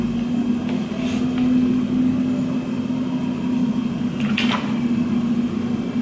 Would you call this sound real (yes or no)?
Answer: yes